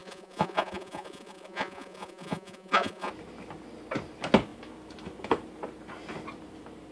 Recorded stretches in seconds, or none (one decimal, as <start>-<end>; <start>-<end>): 3.1-6.9